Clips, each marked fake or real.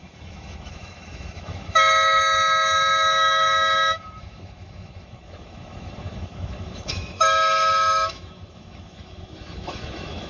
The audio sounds fake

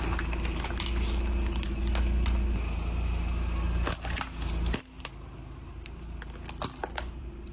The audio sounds real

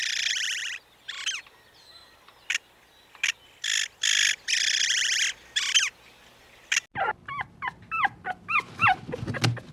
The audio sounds real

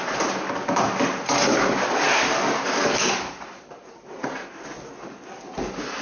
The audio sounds real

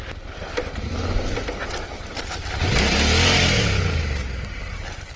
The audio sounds real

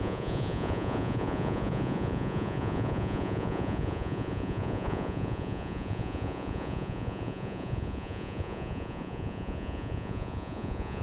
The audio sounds fake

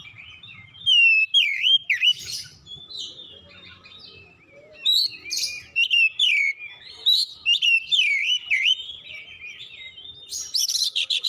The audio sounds fake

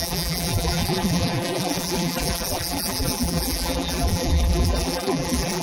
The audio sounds fake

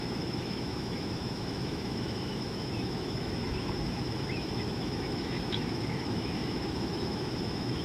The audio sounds fake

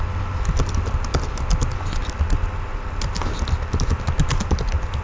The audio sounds real